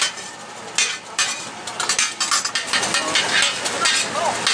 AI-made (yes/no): no